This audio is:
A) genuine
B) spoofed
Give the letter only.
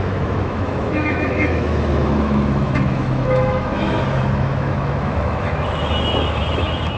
B